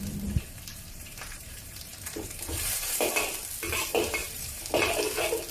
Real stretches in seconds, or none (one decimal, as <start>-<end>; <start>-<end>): 0.0-0.7; 3.1-4.2; 5.0-5.5